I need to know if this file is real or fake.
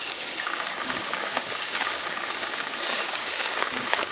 fake